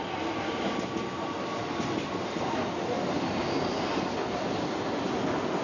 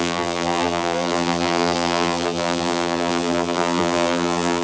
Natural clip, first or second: first